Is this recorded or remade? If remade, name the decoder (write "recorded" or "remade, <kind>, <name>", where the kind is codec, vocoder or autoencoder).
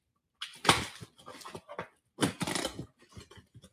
recorded